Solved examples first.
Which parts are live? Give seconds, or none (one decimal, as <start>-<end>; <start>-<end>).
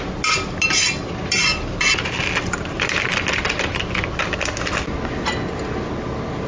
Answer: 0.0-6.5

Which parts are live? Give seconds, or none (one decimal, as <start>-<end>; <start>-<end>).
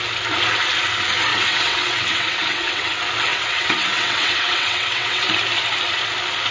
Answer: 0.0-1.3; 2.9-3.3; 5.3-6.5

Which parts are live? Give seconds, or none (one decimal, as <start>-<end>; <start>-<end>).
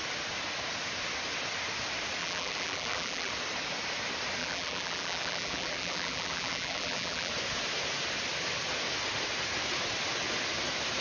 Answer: 0.0-2.2; 3.3-4.4; 7.3-11.0